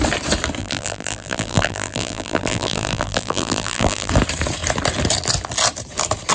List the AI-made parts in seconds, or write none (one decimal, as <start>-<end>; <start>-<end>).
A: 0.6-4.1